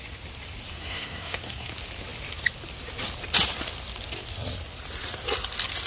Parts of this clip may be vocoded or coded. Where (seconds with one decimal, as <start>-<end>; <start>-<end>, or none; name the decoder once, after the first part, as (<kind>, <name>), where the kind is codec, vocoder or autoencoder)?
0.7-1.7 (codec, SNAC)